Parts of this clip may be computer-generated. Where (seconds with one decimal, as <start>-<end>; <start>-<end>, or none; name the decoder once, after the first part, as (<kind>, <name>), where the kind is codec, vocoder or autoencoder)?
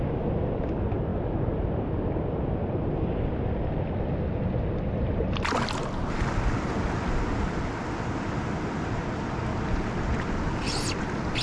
none